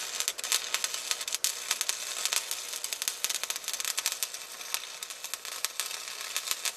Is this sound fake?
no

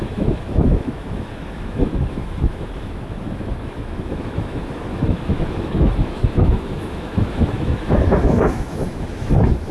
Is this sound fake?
yes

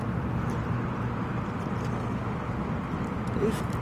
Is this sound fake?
no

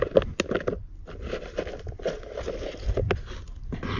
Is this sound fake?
no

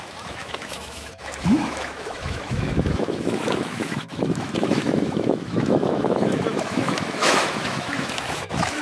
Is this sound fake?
yes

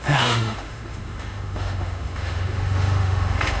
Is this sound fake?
yes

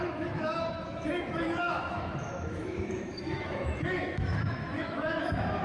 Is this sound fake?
yes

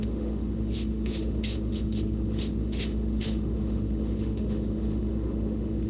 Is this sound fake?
yes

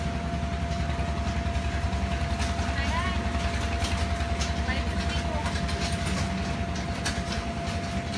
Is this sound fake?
no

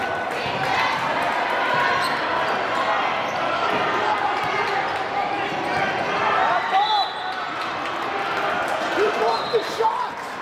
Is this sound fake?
no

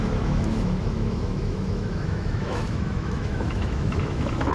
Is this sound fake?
yes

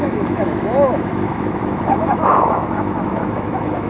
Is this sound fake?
yes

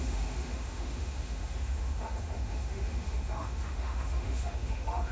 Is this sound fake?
yes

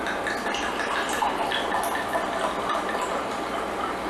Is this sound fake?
no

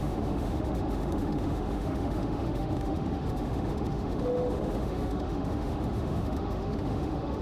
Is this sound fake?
yes